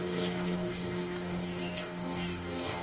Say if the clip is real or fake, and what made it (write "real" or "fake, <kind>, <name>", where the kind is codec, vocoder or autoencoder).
fake, codec, DAC